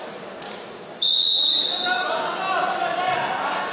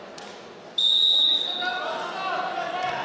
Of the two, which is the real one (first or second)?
second